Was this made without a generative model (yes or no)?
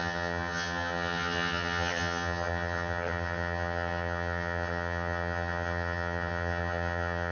no